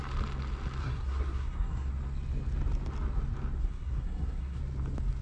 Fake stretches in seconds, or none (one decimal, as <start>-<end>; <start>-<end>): 0.8-1.9; 3.6-4.6